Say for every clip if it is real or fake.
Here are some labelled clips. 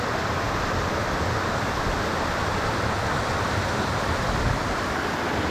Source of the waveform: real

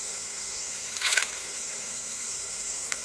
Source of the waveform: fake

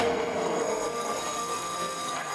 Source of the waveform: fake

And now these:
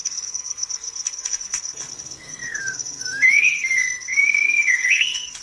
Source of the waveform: fake